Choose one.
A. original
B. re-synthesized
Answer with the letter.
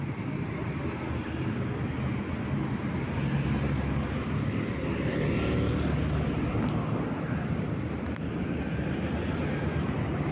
A